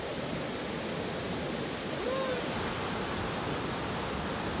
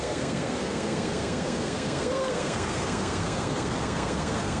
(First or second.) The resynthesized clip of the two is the second